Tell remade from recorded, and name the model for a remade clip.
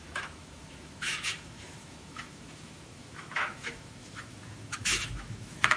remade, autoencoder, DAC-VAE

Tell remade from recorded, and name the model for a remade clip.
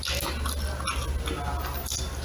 recorded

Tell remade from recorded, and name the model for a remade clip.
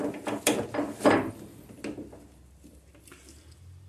recorded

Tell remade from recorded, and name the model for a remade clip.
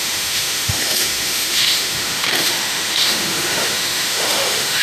remade, autoencoder, DAC-VAE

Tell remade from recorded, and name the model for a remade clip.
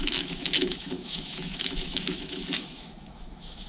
remade, autoencoder, DAC-VAE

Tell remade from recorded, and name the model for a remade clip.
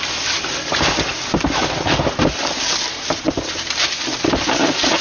recorded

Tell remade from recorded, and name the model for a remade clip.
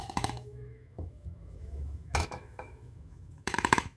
remade, autoencoder, DAC-VAE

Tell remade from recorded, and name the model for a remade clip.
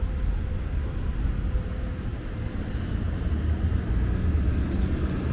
recorded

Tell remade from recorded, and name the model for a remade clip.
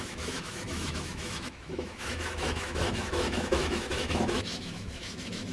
remade, autoencoder, DAC-VAE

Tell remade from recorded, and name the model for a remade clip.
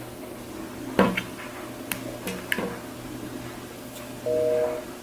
recorded